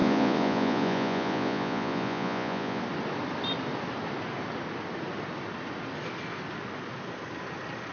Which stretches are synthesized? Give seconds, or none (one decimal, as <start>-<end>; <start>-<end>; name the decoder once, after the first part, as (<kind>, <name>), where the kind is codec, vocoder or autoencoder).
0.0-2.8 (vocoder, Vocos)